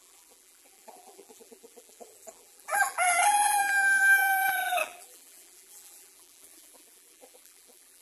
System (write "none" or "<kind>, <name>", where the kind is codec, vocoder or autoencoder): vocoder, BigVGAN v2